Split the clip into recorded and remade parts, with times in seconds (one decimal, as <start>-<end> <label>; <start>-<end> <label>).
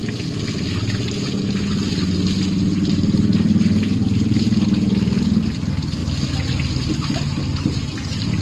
0.0-8.4 recorded